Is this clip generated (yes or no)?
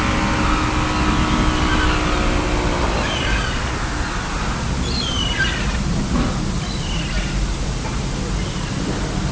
no